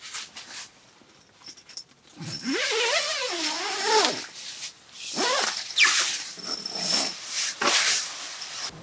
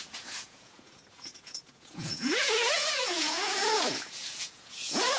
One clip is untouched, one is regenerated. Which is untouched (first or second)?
first